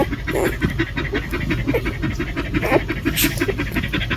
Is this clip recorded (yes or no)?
yes